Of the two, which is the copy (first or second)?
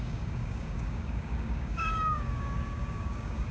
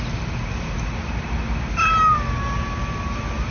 first